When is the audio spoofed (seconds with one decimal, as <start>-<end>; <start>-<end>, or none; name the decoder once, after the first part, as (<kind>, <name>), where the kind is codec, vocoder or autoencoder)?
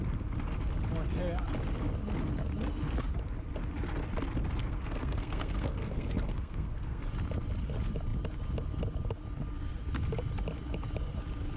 4.6-7.0 (codec, SNAC)